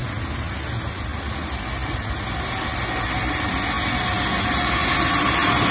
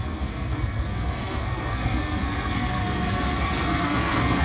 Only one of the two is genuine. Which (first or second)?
first